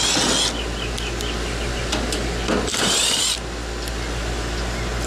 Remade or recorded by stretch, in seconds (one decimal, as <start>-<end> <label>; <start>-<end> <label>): 0.0-2.7 recorded; 2.7-3.2 remade; 3.2-5.1 recorded